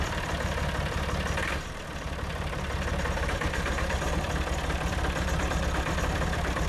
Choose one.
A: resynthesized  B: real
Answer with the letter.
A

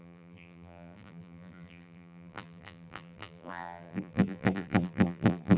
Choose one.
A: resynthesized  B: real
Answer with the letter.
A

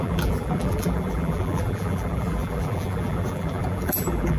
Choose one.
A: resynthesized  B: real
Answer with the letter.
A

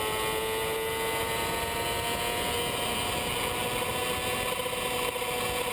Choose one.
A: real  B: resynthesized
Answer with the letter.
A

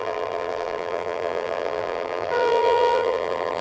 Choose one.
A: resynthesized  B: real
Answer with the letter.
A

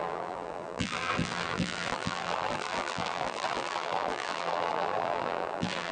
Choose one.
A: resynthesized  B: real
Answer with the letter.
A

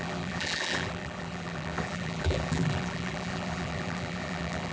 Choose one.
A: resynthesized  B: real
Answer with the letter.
A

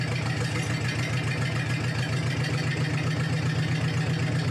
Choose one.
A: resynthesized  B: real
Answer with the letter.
B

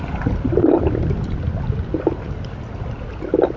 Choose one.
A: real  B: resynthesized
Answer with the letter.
A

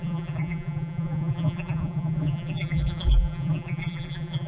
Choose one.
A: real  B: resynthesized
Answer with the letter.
B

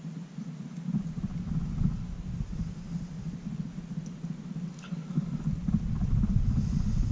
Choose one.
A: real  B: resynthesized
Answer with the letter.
A